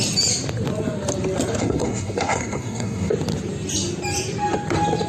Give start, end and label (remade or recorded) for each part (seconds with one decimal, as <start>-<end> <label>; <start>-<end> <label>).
0.0-1.6 recorded; 1.6-3.1 remade; 3.1-5.1 recorded